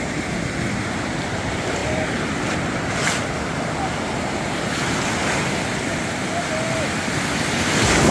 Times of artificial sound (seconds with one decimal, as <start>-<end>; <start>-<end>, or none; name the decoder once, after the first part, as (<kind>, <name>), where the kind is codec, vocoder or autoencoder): none